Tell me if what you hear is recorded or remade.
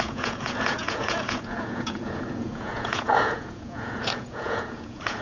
remade